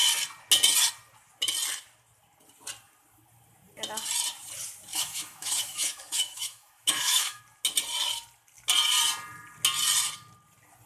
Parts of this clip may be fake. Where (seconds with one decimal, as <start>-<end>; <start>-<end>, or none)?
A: 4.9-7.4